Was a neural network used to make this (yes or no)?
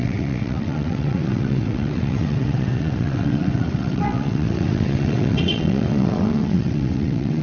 yes